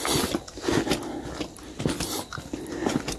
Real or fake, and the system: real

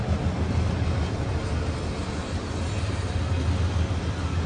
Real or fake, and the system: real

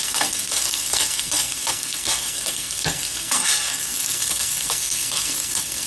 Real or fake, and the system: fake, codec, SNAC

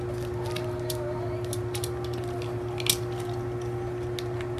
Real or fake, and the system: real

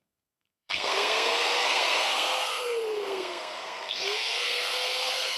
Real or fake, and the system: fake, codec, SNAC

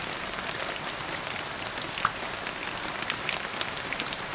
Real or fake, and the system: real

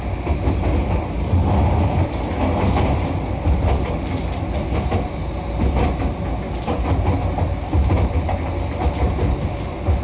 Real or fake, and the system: real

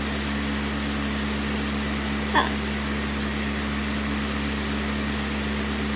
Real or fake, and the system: real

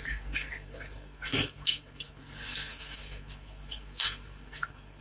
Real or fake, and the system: fake, codec, SNAC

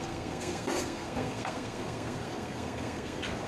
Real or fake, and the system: fake, codec, SNAC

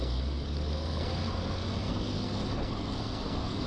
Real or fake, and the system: fake, codec, SNAC